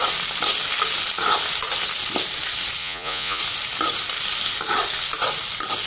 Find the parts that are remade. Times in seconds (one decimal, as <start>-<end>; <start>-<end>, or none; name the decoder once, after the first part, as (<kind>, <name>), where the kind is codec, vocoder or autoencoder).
2.8-3.4 (vocoder, Vocos)